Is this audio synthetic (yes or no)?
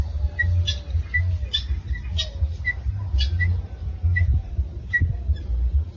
no